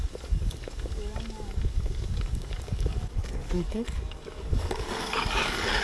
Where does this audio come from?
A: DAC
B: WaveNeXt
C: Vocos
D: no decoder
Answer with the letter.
A